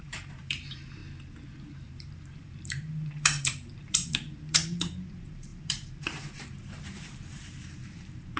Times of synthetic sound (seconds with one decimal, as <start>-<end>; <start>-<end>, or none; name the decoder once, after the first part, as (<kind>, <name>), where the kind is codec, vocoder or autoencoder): 0.0-1.0 (vocoder, BigVGAN v2); 1.6-8.4